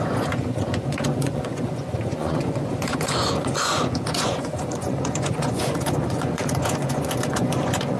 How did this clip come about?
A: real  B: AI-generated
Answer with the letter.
B